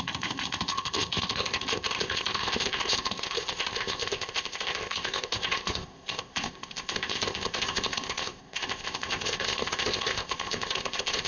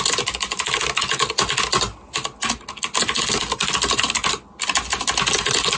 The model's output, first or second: first